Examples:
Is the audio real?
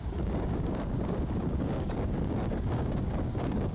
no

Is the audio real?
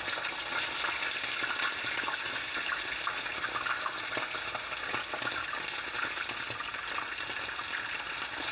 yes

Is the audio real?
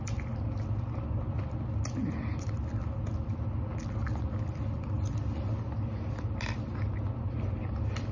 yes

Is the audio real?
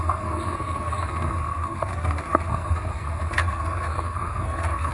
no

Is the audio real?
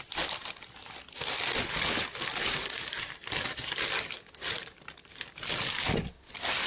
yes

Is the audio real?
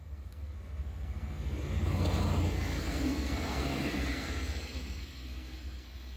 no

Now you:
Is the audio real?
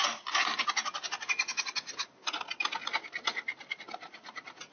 yes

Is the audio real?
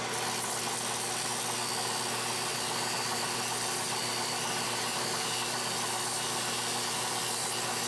yes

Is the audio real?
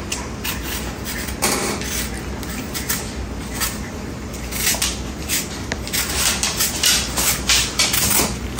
yes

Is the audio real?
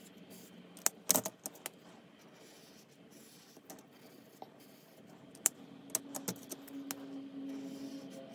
yes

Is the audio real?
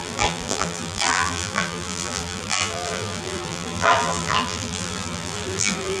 no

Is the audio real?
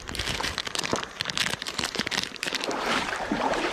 no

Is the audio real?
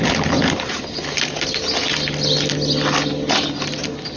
yes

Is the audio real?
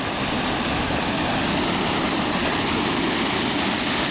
yes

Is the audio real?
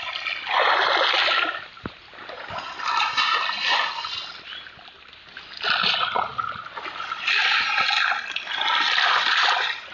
yes